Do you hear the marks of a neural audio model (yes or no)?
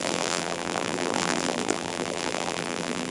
yes